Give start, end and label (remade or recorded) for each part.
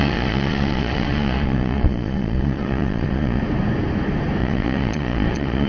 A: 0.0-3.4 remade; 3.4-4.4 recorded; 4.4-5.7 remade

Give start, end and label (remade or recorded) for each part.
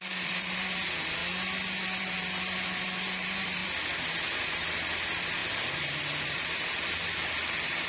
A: 0.0-1.2 remade; 1.2-2.0 recorded; 2.0-3.6 remade; 3.6-4.4 recorded; 4.4-7.9 remade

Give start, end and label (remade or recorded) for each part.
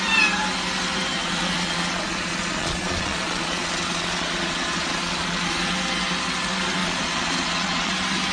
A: 0.0-1.2 recorded; 1.2-5.7 remade; 5.7-6.8 recorded; 6.8-7.9 remade; 7.9-8.3 recorded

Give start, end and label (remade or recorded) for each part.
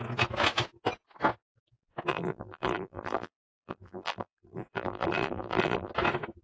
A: 0.0-2.1 recorded; 2.1-5.9 remade; 5.9-6.4 recorded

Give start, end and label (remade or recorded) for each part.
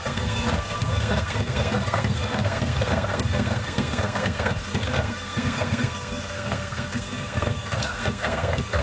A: 0.0-8.8 remade